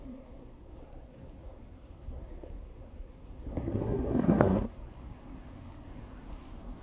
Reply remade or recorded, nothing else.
remade